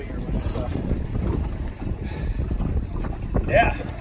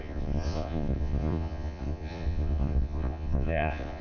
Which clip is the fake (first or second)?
second